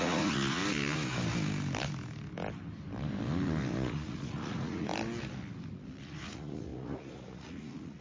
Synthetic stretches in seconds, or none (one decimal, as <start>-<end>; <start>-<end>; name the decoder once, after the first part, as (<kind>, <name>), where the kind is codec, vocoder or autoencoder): 0.0-0.6 (vocoder, Vocos); 3.7-4.9; 6.0-8.0